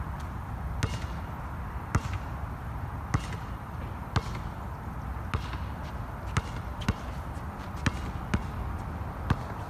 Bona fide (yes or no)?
yes